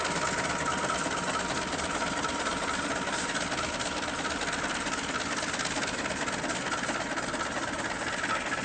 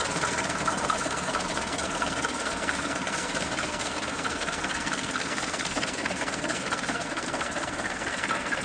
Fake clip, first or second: second